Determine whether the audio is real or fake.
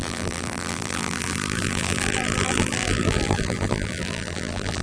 fake